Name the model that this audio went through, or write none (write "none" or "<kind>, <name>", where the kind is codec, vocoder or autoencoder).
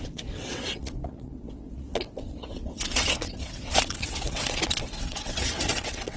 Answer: vocoder, WaveNeXt